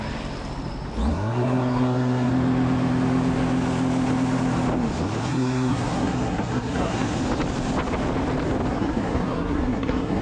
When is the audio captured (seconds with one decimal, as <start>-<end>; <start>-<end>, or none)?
0.0-1.1; 2.3-5.2; 7.2-8.7